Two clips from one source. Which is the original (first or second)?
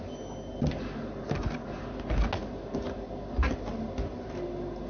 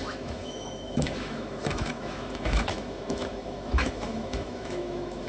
first